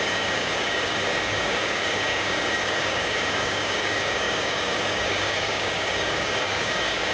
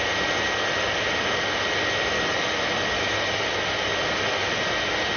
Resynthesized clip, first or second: first